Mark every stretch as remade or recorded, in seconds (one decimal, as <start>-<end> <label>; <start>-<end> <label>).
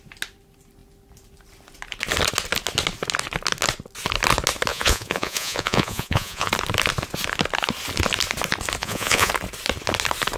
0.0-4.7 recorded; 4.7-6.5 remade; 6.5-8.8 recorded; 8.8-9.3 remade; 9.3-10.4 recorded